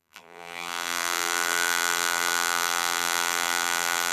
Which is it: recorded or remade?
remade